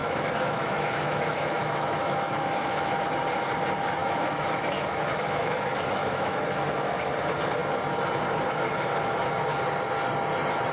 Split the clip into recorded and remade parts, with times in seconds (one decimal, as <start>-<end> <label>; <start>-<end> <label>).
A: 0.0-3.0 remade; 3.0-4.0 recorded; 4.0-7.1 remade; 7.1-10.7 recorded